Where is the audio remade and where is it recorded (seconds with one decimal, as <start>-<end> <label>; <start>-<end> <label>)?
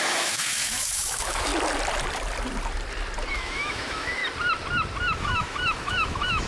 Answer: 0.0-1.5 remade; 1.5-3.3 recorded; 3.3-4.2 remade; 4.2-5.2 recorded; 5.2-6.5 remade